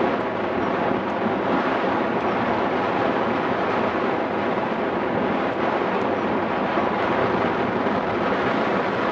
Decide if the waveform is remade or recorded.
recorded